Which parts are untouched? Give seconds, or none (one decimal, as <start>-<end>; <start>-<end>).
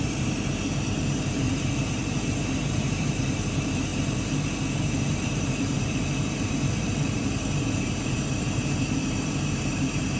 3.9-4.8